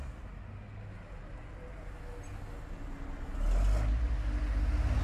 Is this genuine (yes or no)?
yes